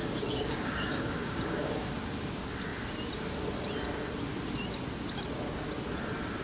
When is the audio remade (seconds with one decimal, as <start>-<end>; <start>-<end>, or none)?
0.0-1.9